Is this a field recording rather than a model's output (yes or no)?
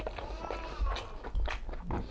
yes